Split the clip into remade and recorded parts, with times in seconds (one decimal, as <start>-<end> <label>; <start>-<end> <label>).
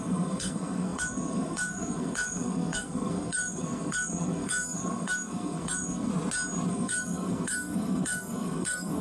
0.0-6.1 remade; 6.1-6.7 recorded; 6.7-9.0 remade